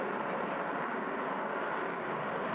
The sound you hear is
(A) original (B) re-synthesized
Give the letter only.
A